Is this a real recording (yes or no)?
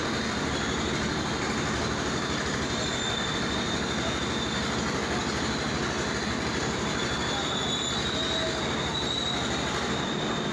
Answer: yes